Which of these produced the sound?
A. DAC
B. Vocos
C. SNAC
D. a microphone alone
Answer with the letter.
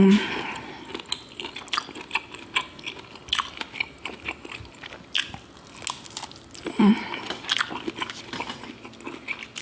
D